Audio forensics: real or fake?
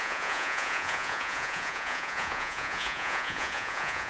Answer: fake